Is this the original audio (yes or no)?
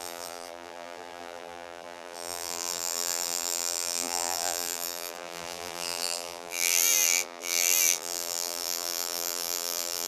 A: no